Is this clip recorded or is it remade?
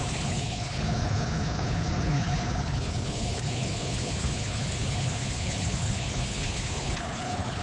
remade